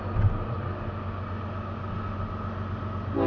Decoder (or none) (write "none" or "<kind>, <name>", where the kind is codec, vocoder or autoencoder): none